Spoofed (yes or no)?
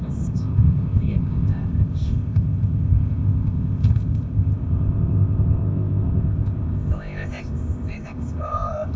yes